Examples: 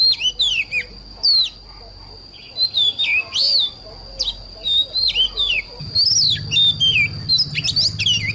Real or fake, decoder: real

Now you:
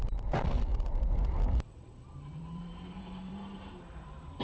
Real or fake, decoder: fake, vocoder, BigVGAN v2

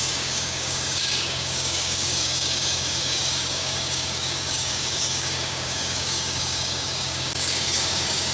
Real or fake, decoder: fake, codec, DAC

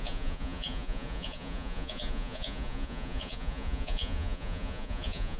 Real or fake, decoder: fake, vocoder, Vocos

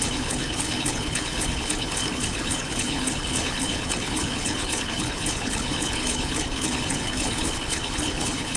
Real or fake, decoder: fake, codec, HILCodec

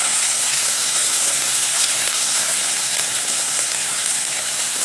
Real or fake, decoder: fake, codec, SNAC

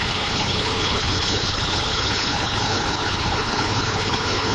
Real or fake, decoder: fake, codec, HILCodec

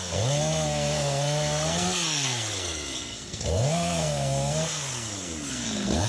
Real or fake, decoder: fake, codec, SNAC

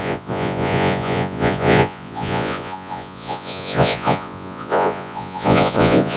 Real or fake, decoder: fake, vocoder, Vocos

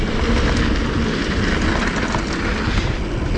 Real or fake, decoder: real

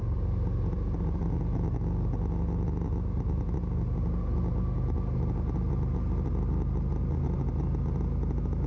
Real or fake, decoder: real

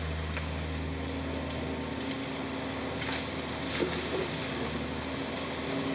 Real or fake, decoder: real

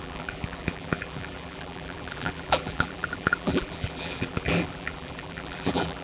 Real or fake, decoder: fake, vocoder, BigVGAN v2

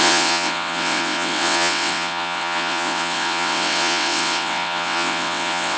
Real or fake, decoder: fake, vocoder, WaveNeXt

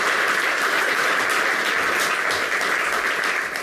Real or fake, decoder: real